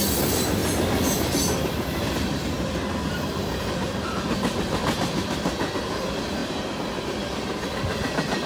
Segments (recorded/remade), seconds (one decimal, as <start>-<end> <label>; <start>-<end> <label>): 0.0-0.6 remade; 0.6-1.3 recorded; 1.3-6.4 remade; 6.4-7.0 recorded; 7.0-8.5 remade